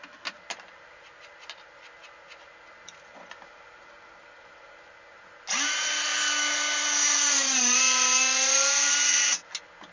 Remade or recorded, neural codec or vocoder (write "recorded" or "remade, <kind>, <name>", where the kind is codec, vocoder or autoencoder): recorded